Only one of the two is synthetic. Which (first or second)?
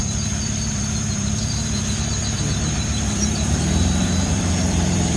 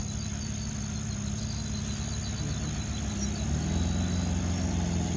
first